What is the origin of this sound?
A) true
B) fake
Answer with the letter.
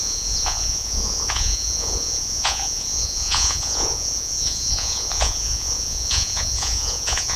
B